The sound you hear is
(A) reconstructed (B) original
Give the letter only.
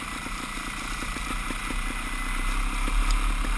B